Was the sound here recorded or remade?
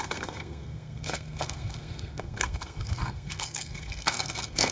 remade